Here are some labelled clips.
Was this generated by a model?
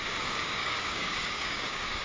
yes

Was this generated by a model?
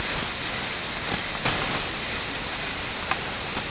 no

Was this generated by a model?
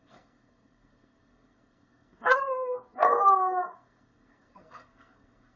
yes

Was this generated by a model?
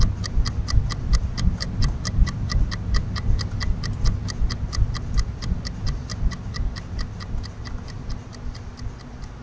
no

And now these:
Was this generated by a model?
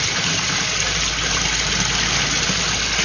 no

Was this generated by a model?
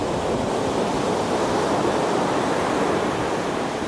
no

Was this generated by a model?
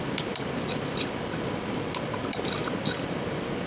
no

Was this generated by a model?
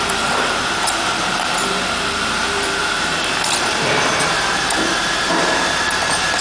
yes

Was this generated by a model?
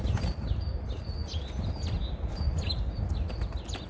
no